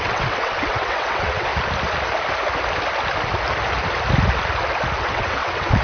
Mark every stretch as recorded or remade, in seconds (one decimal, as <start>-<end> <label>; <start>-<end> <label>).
0.0-1.5 remade; 1.5-5.0 recorded; 5.0-5.8 remade